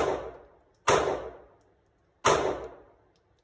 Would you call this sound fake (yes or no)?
no